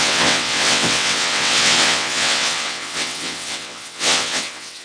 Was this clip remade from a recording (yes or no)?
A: yes